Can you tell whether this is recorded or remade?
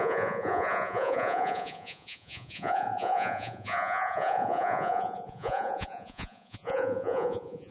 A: remade